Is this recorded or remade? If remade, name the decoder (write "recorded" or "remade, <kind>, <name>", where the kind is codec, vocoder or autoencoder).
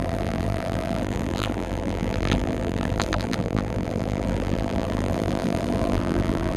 remade, vocoder, BigVGAN v2